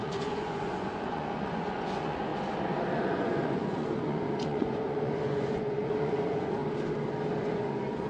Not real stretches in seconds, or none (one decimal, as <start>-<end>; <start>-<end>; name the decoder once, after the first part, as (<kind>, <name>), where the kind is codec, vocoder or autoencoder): 0.0-2.3 (vocoder, Vocos); 2.9-6.6; 7.4-8.1